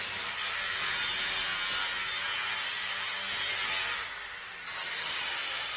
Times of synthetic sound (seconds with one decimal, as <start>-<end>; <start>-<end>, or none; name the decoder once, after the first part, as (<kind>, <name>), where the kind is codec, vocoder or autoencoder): none